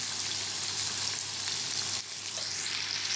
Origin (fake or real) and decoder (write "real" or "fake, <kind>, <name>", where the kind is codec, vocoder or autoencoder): real